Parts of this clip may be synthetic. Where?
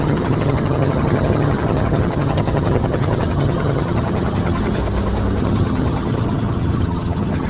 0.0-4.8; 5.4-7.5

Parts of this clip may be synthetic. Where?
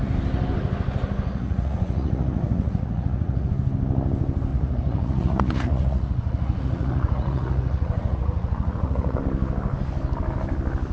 1.3-3.5; 4.5-9.2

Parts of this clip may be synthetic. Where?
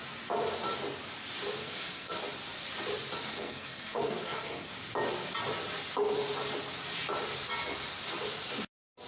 1.6-2.1; 3.3-4.7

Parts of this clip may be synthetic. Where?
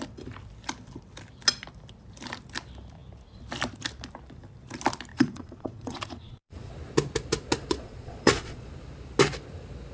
5.1-6.7; 7.6-8.7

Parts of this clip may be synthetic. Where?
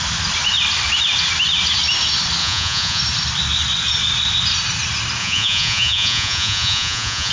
2.4-3.0; 5.2-7.3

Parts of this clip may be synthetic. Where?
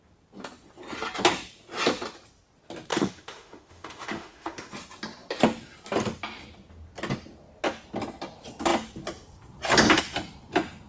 2.9-4.7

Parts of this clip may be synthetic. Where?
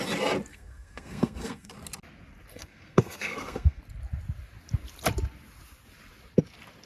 0.5-1.7; 2.5-3.8